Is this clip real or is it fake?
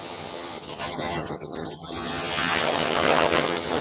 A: fake